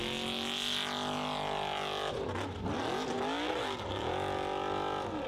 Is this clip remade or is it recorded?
recorded